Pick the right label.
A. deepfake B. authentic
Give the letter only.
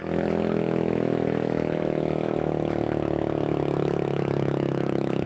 A